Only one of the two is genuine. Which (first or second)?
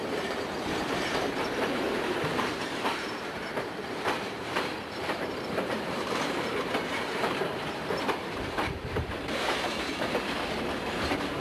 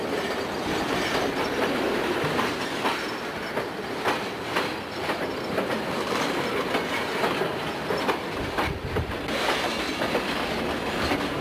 second